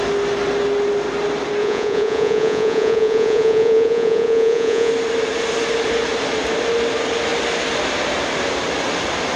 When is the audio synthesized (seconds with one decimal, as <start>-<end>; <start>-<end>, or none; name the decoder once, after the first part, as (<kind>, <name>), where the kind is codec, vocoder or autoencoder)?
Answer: 1.6-4.9 (vocoder, Vocos)